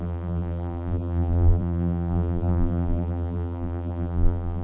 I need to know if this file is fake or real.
fake